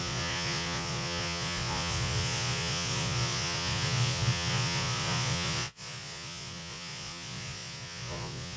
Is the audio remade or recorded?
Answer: remade